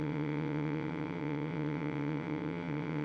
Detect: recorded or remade remade